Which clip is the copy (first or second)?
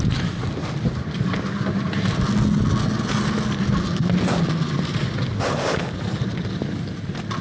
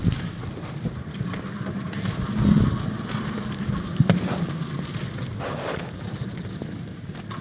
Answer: second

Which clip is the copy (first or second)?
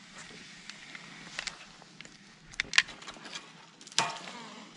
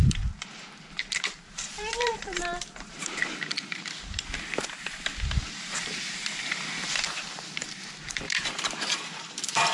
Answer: second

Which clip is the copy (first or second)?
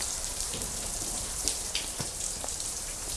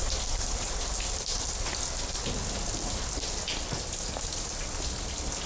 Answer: first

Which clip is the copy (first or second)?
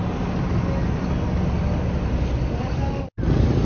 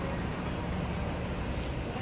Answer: second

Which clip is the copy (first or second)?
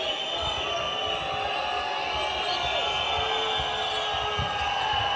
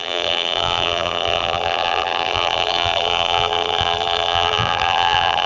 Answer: second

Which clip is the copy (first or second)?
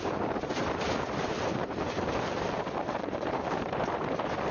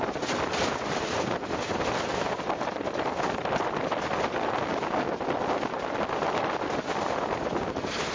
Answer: first